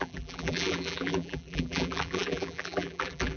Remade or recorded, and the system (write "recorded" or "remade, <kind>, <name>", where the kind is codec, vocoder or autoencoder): remade, vocoder, BigVGAN v2